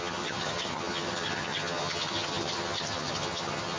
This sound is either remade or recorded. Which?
remade